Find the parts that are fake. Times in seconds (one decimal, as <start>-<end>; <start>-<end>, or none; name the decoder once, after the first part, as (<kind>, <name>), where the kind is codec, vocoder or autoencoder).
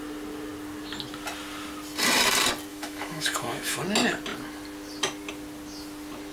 2.7-3.8 (autoencoder, DAC-VAE)